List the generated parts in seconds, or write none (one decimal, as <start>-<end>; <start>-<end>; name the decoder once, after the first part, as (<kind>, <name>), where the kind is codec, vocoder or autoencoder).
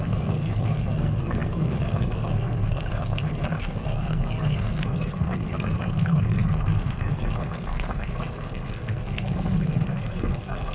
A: 0.0-10.7 (codec, SNAC)